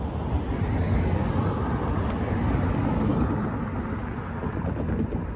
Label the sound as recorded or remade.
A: recorded